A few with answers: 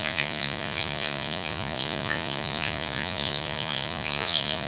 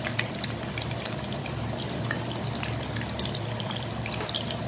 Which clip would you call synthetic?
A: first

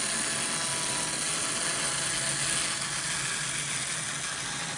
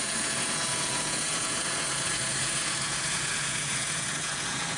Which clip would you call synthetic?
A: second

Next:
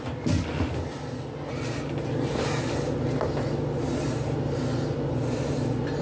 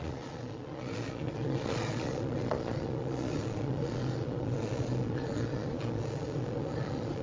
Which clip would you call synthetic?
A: second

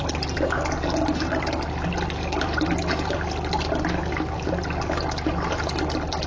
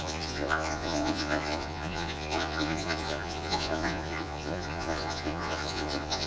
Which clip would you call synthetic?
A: second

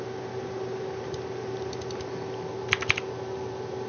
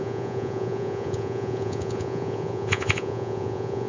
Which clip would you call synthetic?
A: second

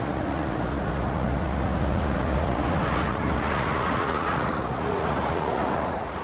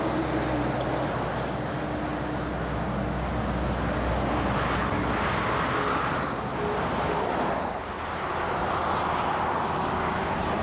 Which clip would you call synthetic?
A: first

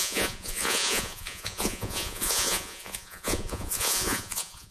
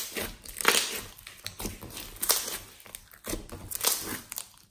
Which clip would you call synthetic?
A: first